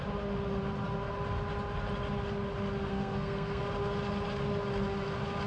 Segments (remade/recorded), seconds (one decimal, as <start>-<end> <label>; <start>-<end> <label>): 0.0-2.9 recorded; 2.9-3.6 remade; 3.6-5.5 recorded